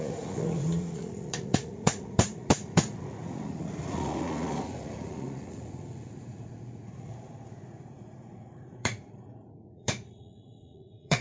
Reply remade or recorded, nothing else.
remade